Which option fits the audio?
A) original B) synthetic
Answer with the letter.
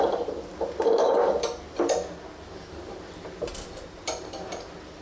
B